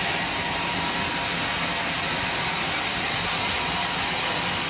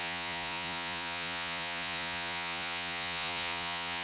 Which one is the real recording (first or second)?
first